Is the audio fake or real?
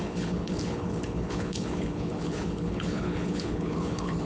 fake